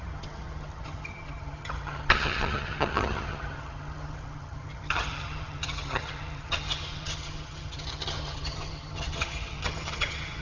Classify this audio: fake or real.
fake